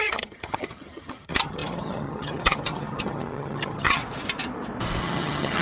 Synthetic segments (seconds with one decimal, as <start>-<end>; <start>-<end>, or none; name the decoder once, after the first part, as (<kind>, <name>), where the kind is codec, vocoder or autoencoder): 0.0-4.0 (vocoder, HiFi-GAN); 5.0-5.6